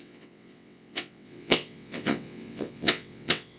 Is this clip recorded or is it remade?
remade